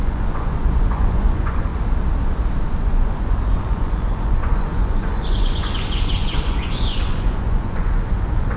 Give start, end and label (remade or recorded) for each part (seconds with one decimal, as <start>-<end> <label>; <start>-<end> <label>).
0.0-1.7 remade; 1.7-2.7 recorded; 2.7-8.6 remade